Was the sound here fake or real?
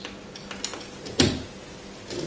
real